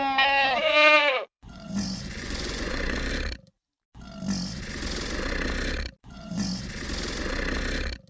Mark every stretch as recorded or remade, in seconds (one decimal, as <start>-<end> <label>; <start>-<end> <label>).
0.0-1.0 recorded; 1.0-3.1 remade; 3.1-6.0 recorded; 6.0-6.6 remade; 6.6-8.1 recorded